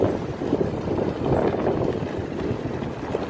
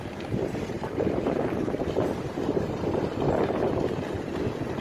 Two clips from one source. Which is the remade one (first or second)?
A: second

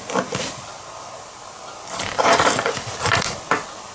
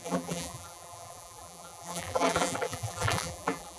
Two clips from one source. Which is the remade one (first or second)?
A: second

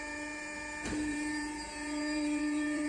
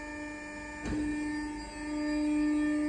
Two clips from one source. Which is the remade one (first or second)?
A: first